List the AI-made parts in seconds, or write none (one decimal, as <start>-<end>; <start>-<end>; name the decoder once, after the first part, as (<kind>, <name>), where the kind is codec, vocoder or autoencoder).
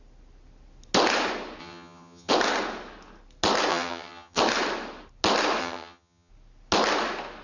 1.6-2.3 (vocoder, HiFi-GAN); 3.7-4.4; 5.6-6.3